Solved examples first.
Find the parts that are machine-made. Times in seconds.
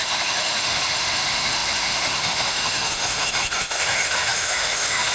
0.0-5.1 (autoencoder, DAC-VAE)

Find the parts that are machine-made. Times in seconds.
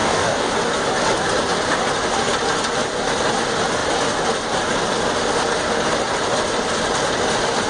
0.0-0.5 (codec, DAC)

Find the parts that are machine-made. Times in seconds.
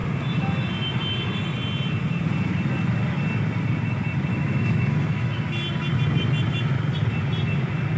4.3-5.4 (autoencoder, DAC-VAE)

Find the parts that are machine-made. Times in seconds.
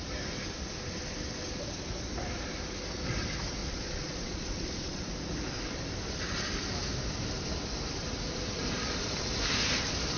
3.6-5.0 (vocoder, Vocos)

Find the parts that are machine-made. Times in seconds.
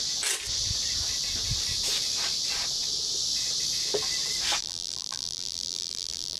4.6-6.4 (vocoder, BigVGAN v2)